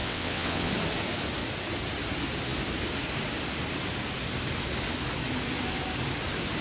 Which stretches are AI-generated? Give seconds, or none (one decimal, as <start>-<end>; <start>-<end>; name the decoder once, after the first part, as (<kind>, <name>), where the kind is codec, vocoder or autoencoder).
0.0-0.7 (vocoder, WaveNeXt)